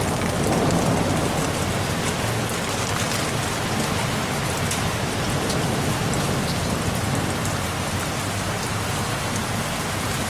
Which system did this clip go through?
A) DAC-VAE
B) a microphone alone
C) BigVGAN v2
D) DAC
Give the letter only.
B